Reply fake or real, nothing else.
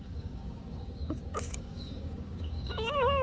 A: fake